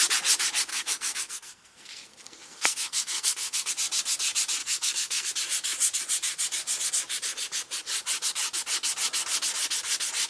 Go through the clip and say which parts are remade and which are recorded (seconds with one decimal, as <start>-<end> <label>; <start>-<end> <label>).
0.0-0.7 recorded; 0.7-3.7 remade; 3.7-4.6 recorded; 4.6-5.3 remade; 5.3-10.3 recorded